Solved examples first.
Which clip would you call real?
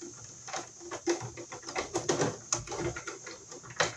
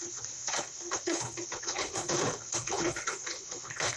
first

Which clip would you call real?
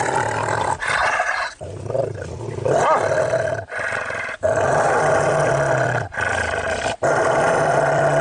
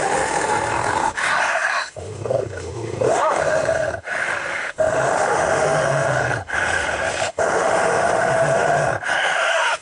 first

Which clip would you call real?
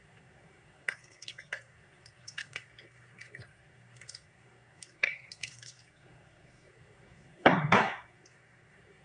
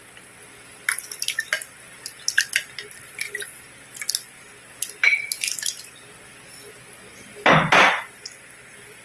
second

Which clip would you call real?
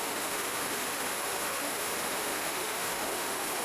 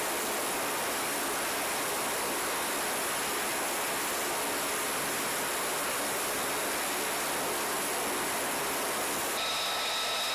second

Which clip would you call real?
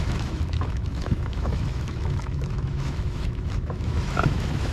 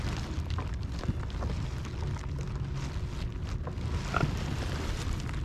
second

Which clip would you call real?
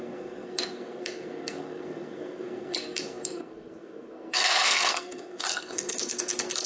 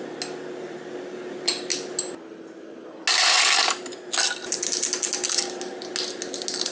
second